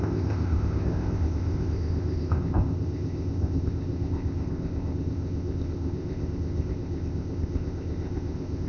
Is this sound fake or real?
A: fake